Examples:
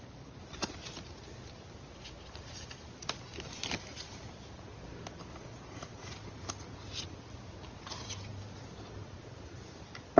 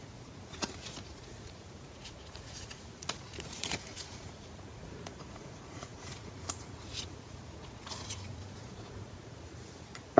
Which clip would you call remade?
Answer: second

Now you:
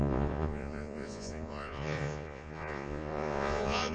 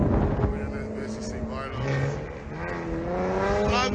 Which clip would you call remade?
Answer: first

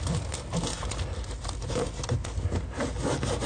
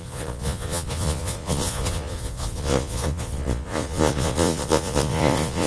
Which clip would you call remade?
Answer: second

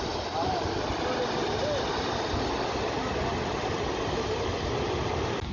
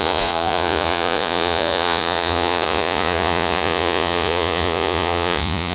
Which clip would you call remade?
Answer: second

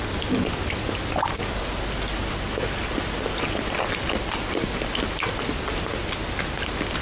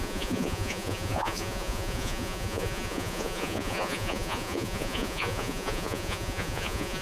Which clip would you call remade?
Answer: second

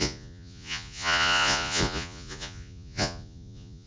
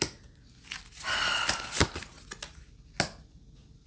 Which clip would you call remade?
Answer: first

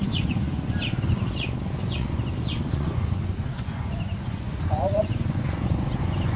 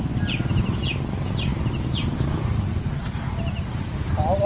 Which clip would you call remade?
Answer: first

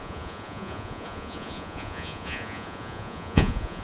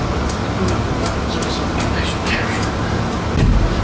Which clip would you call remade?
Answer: first